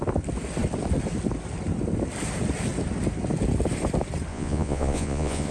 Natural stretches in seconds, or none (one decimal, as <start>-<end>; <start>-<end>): 0.0-4.3